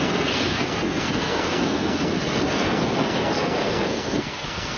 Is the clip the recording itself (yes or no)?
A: no